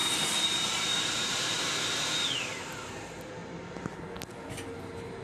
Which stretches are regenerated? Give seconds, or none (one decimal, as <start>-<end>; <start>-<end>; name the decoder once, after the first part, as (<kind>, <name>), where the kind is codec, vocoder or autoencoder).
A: 0.0-1.7 (vocoder, BigVGAN v2)